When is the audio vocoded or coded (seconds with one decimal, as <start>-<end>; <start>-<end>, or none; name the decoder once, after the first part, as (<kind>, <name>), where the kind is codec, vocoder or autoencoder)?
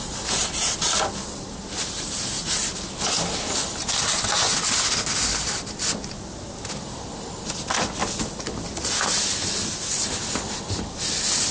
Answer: none